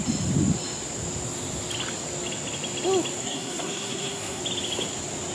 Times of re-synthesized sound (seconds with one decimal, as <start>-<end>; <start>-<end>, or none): 3.2-4.4